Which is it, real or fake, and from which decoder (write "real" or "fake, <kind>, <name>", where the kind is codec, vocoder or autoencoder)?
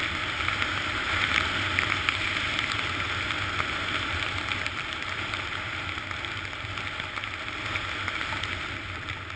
real